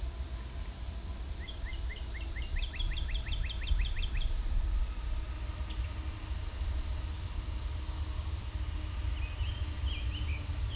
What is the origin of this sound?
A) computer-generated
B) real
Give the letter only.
B